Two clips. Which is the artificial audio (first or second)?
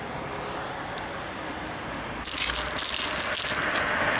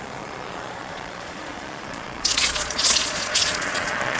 second